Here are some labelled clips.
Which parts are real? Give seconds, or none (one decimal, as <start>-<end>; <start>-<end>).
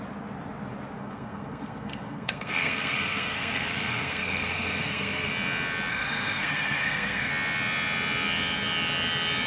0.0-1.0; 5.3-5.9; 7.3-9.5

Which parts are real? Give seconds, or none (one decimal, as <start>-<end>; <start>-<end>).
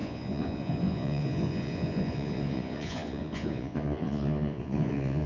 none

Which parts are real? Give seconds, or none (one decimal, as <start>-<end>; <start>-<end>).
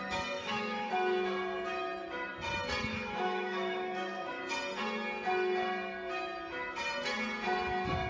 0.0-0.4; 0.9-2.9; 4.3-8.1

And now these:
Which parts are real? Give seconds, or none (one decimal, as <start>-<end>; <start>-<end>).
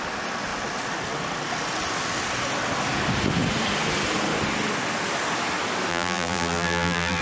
0.0-5.9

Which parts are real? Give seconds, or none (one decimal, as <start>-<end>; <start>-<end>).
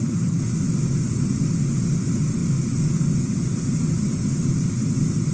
0.0-5.3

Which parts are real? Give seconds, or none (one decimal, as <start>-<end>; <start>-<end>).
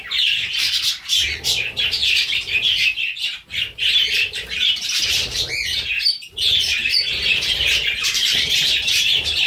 none